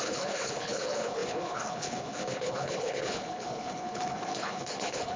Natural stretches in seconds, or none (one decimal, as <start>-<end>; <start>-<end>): none